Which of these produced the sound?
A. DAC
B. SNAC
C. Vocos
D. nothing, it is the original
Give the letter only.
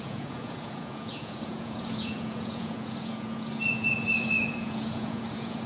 C